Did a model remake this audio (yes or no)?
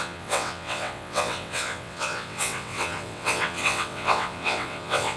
yes